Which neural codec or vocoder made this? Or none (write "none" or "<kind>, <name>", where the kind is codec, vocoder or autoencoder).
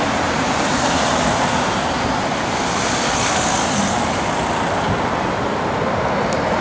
none